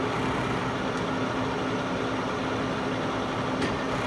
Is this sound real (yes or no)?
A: yes